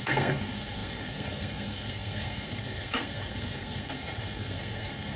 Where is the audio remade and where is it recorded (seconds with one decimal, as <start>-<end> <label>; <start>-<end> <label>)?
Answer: 0.0-5.2 remade